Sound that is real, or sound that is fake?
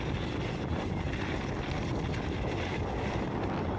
real